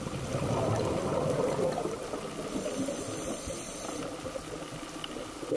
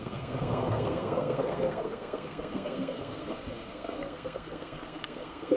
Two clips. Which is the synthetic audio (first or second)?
second